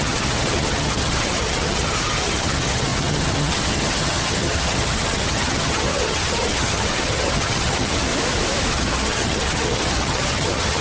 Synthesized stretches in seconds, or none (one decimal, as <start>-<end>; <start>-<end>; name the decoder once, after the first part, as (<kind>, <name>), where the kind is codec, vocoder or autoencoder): 0.0-8.1 (vocoder, HiFi-GAN); 8.7-10.8

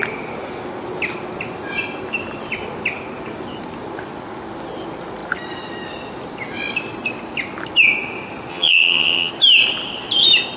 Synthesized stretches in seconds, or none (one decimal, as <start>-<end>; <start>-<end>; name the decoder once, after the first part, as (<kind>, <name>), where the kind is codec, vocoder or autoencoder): 8.5-9.3 (vocoder, HiFi-GAN)